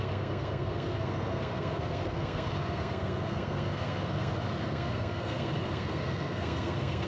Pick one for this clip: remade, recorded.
remade